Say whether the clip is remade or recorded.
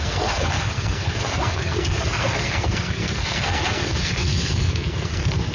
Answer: remade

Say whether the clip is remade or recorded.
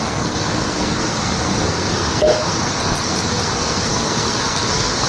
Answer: remade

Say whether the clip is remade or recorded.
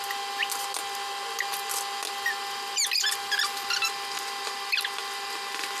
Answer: recorded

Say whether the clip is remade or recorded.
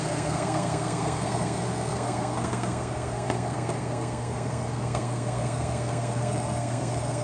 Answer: remade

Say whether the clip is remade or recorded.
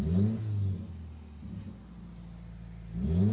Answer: recorded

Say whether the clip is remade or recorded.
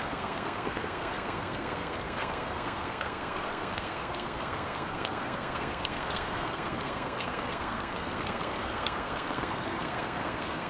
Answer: remade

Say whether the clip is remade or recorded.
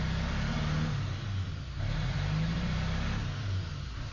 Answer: recorded